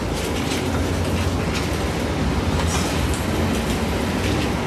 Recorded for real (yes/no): yes